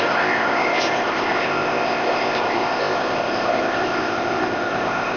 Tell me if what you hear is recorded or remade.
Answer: remade